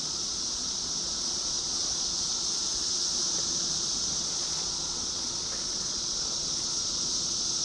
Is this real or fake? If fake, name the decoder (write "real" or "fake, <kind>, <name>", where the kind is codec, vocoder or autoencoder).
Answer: fake, vocoder, Vocos